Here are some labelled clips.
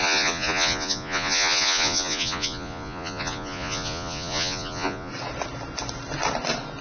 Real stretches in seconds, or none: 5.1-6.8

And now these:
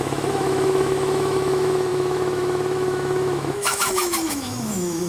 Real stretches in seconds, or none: none

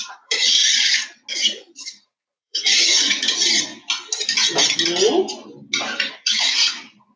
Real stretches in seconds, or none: 0.6-1.3; 3.7-6.1

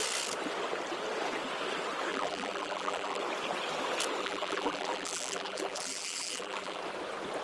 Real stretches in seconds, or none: 0.0-2.1; 3.2-4.2; 6.8-7.4

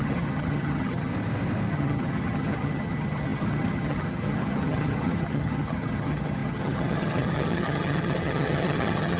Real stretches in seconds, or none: 1.1-1.7

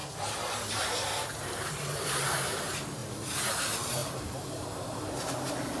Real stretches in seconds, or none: 0.0-0.7

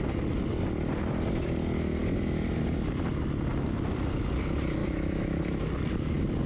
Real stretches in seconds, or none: 0.0-4.8; 5.7-6.5

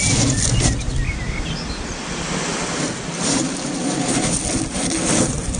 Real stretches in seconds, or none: 0.0-5.6